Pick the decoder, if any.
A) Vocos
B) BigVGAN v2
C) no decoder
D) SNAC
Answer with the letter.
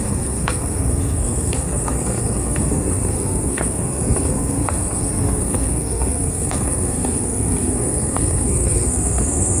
D